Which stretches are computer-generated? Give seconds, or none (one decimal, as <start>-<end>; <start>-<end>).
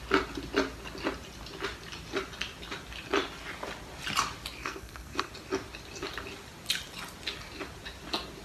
4.6-5.3